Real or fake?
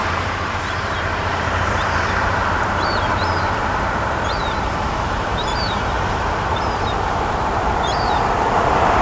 fake